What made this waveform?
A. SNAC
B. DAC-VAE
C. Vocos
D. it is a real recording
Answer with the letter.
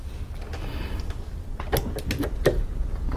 D